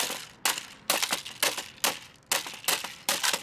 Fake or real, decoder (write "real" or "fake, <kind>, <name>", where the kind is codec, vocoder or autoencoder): real